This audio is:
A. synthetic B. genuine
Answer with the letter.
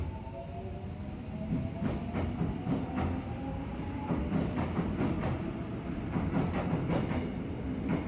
B